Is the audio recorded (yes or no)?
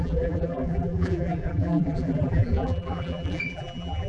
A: no